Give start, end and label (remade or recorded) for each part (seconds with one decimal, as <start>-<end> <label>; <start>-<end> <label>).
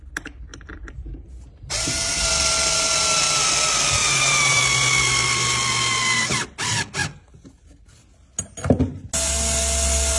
0.0-0.5 recorded; 0.5-2.3 remade; 2.3-4.0 recorded; 4.0-4.6 remade; 4.6-10.2 recorded